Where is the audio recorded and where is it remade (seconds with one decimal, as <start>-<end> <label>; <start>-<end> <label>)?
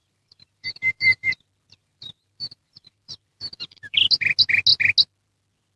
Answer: 0.0-1.3 remade; 1.3-1.8 recorded; 1.8-4.1 remade; 4.1-5.8 recorded